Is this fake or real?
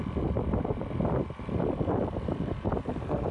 real